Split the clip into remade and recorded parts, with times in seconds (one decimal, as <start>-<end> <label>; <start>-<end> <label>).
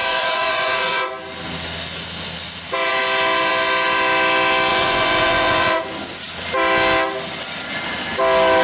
0.0-1.1 remade; 1.1-4.7 recorded; 4.7-5.8 remade; 5.8-8.6 recorded